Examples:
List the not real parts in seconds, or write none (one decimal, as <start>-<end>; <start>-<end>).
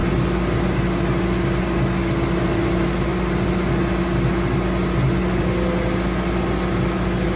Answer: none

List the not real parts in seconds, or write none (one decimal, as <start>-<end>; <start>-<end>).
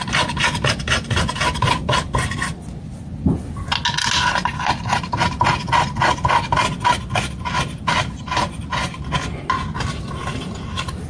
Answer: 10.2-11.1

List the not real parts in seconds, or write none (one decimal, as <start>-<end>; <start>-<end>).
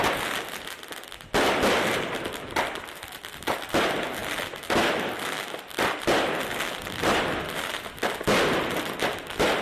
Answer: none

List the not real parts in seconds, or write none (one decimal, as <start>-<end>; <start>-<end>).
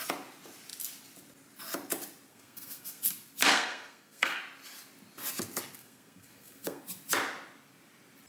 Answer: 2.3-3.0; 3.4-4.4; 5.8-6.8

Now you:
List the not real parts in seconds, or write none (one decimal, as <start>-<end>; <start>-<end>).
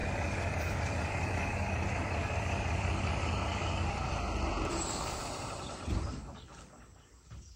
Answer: 0.0-4.1; 4.7-5.2; 6.1-7.6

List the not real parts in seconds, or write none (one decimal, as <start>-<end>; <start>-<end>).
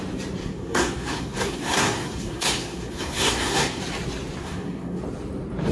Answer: 0.4-3.8; 4.4-5.0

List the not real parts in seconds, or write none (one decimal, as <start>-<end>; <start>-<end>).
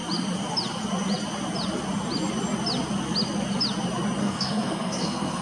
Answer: 4.2-5.4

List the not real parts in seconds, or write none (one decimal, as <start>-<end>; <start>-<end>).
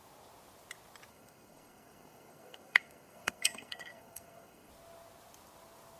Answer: 1.1-4.7